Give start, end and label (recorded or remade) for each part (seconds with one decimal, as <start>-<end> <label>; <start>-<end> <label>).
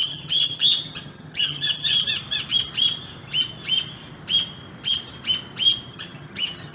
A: 0.0-1.9 remade; 1.9-5.9 recorded; 5.9-6.7 remade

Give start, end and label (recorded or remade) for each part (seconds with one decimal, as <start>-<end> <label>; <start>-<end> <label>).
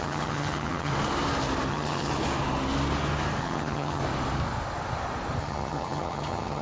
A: 0.0-0.9 remade; 0.9-1.7 recorded; 1.7-2.1 remade; 2.1-3.4 recorded; 3.4-4.0 remade; 4.0-5.4 recorded; 5.4-6.6 remade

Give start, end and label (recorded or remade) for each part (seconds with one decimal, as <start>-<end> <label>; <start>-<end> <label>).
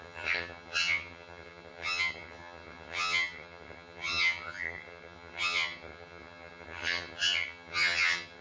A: 0.0-8.4 remade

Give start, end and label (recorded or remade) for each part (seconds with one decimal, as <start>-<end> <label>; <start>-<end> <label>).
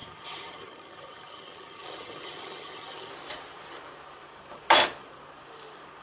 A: 0.0-3.1 remade; 3.1-6.0 recorded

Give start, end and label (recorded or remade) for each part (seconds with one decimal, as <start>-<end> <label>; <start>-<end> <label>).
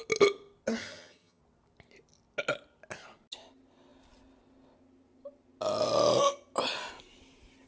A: 0.0-0.8 recorded; 0.8-1.4 remade; 1.4-7.7 recorded